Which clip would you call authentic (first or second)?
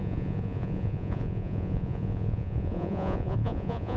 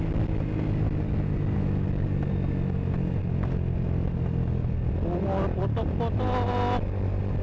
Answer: second